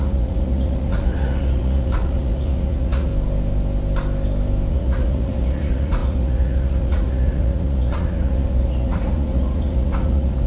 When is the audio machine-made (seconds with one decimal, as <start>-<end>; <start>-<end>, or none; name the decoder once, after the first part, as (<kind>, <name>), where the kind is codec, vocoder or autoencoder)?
0.0-3.1 (vocoder, Vocos); 4.7-10.5